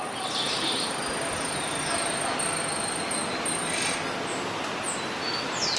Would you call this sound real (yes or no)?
yes